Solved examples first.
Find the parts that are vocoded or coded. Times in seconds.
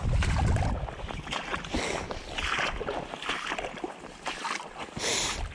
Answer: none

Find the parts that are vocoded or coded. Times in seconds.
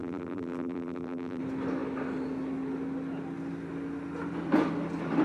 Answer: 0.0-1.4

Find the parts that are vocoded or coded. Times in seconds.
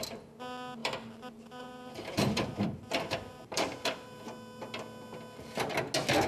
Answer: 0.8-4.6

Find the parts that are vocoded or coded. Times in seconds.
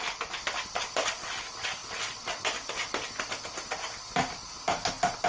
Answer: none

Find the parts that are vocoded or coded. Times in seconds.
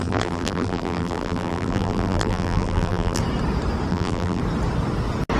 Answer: 0.0-3.2; 3.9-4.4